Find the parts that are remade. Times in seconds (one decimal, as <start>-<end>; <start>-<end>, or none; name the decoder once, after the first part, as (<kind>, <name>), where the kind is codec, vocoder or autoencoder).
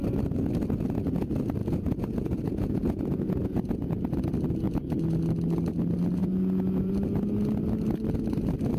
1.6-3.7 (vocoder, Vocos); 6.2-6.9